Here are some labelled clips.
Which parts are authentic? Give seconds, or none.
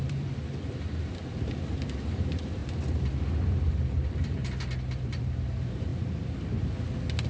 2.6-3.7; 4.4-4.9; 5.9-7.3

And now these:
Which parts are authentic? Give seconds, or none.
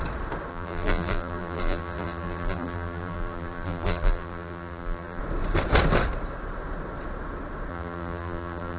0.0-0.5; 5.2-7.7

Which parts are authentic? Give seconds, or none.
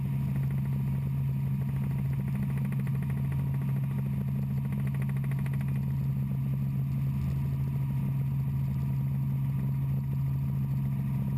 0.0-11.4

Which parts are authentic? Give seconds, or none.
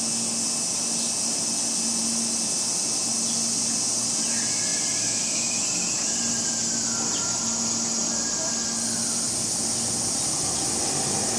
0.0-4.7; 6.5-11.4